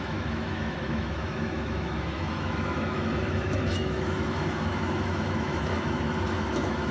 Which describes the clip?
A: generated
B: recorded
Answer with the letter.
A